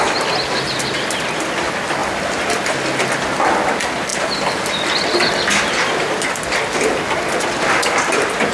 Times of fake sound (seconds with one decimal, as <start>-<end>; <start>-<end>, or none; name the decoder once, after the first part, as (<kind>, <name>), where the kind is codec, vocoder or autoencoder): none